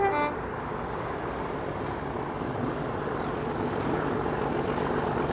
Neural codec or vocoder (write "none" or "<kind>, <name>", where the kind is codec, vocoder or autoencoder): none